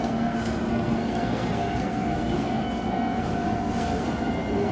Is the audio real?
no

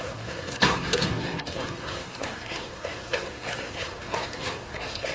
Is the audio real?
no